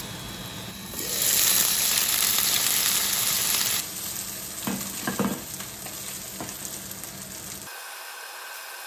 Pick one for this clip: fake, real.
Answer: real